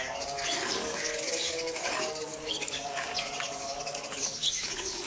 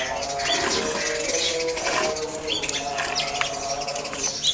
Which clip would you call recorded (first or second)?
second